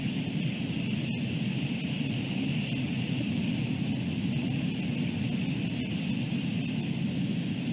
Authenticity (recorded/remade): recorded